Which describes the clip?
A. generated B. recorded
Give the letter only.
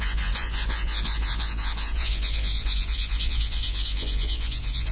A